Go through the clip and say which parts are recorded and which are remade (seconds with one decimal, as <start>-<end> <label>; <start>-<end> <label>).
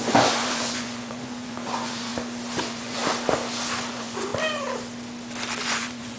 0.0-2.1 remade; 2.1-2.6 recorded; 2.6-3.0 remade; 3.0-3.9 recorded; 3.9-4.3 remade; 4.3-5.6 recorded; 5.6-6.2 remade